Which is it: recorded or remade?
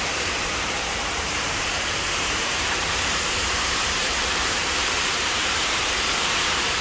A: remade